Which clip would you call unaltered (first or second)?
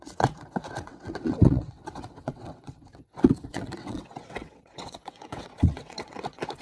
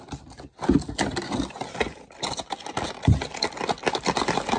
second